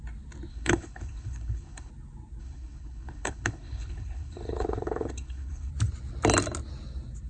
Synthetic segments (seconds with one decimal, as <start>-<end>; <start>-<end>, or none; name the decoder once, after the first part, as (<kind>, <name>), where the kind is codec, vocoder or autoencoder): 0.5-1.9 (codec, HILCodec); 2.4-5.7